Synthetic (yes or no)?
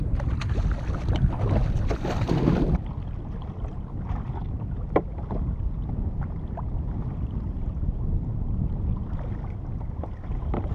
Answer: no